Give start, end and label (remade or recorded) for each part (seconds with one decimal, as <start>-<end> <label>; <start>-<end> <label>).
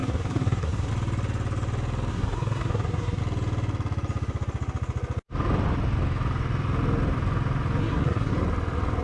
0.0-0.9 remade; 0.9-2.1 recorded; 2.1-3.2 remade; 3.2-7.8 recorded; 7.8-8.3 remade; 8.3-9.0 recorded